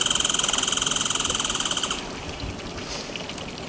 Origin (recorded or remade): recorded